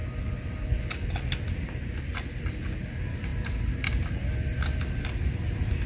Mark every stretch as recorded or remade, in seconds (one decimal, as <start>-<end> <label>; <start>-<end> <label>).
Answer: 0.0-5.9 recorded